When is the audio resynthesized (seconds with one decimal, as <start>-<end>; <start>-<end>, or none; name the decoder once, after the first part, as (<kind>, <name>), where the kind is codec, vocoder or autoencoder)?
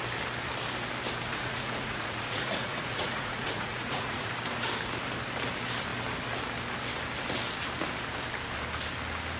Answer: 1.3-4.3 (vocoder, Vocos)